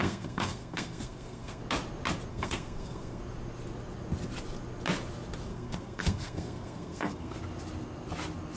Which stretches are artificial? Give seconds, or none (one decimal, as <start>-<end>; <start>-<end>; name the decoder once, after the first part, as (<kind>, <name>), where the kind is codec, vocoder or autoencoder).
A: 0.0-1.6 (codec, SNAC); 2.3-3.2; 5.5-7.4